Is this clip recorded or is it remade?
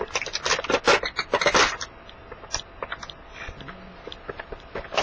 recorded